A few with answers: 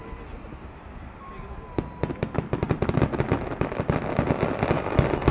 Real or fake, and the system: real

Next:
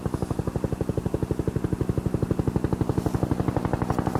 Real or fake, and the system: real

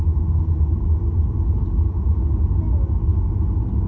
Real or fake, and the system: real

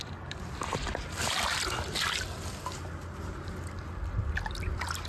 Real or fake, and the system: real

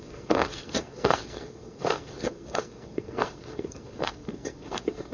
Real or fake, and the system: fake, codec, SNAC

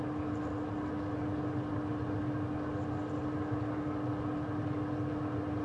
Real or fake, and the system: real